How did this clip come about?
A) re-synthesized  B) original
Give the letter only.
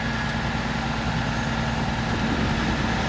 B